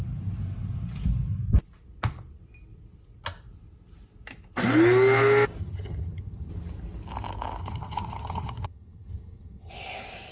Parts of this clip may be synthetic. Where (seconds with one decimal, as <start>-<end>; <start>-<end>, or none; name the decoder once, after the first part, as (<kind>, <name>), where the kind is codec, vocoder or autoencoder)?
5.6-6.5 (vocoder, HiFi-GAN); 7.6-9.7